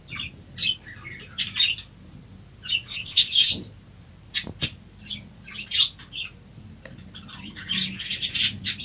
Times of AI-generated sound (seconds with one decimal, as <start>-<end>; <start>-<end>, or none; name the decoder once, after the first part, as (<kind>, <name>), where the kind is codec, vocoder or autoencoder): 2.9-3.5 (codec, ZipCodec)